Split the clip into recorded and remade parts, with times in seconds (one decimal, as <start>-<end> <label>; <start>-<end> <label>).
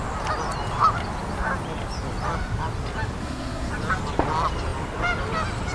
0.0-3.2 recorded; 3.2-3.7 remade; 3.7-5.7 recorded